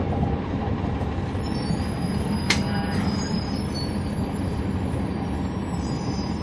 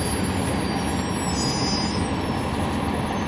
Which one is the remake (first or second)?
first